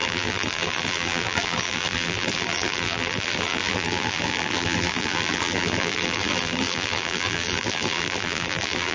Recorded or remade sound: remade